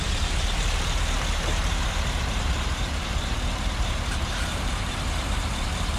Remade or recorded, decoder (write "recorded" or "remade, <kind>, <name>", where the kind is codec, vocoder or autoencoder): remade, vocoder, BigVGAN v2